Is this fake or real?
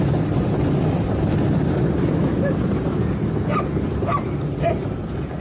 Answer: real